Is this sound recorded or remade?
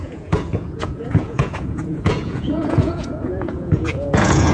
remade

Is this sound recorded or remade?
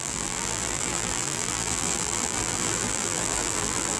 remade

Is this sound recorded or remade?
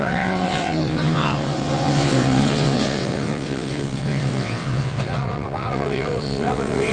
remade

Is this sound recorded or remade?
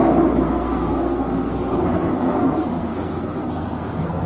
remade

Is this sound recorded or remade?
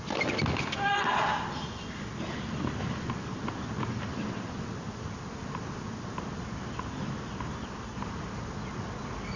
recorded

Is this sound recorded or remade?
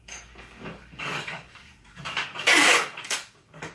remade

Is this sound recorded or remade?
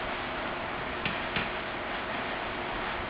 recorded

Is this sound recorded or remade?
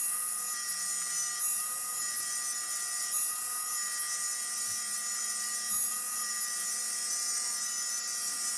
recorded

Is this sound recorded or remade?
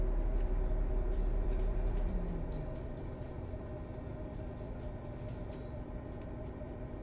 remade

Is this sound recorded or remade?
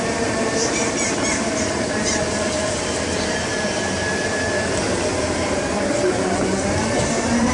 remade